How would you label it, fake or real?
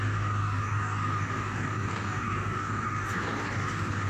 fake